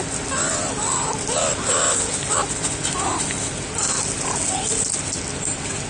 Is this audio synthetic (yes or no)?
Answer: no